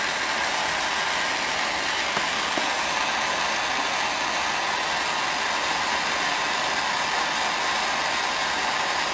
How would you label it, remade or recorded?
recorded